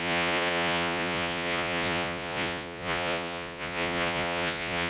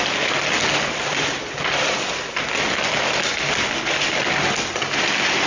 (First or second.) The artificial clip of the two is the first